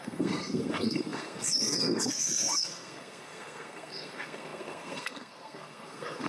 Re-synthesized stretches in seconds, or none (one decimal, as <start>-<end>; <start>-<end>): 0.0-6.3